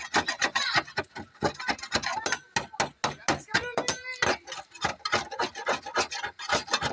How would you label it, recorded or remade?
recorded